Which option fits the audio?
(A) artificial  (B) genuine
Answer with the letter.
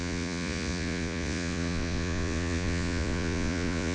A